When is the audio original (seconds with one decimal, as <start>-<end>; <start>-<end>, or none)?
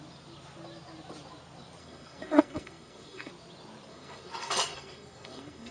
0.0-1.8; 3.3-3.9